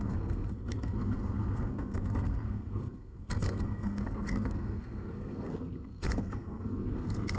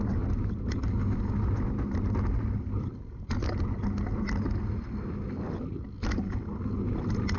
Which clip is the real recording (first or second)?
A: second